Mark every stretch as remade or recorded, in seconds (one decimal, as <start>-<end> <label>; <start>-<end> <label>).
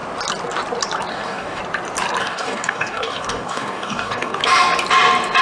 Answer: 0.0-1.1 recorded; 1.1-1.6 remade; 1.6-2.2 recorded; 2.2-4.4 remade; 4.4-5.4 recorded